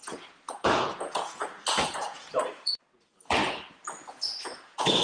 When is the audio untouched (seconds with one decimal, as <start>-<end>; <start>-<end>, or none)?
3.4-4.0